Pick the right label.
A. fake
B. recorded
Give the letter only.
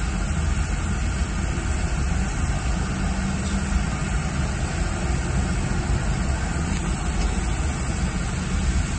B